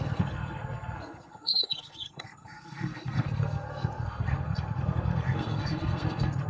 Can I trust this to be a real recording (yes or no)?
no